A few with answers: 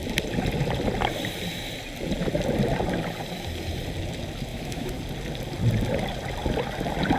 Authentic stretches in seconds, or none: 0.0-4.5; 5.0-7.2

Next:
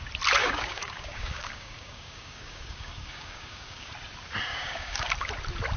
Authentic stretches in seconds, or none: 0.0-0.4; 3.9-4.5; 5.1-5.8

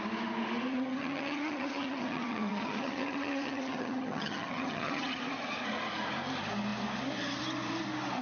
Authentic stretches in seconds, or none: 0.0-0.7; 5.2-8.2

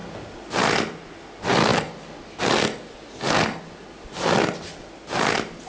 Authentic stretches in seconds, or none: 0.0-5.7